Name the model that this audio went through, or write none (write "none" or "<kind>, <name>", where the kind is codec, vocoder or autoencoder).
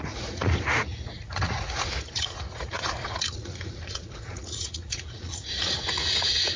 vocoder, Vocos